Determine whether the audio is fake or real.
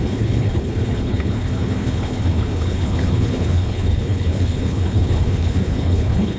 fake